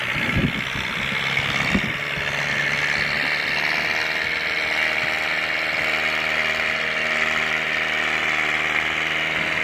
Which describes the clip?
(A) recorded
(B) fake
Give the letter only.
A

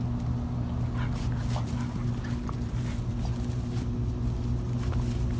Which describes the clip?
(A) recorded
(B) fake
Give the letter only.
A